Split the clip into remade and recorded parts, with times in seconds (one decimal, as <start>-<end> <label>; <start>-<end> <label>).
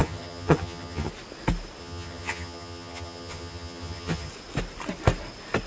0.0-1.1 remade; 1.1-1.8 recorded; 1.8-4.3 remade; 4.3-5.7 recorded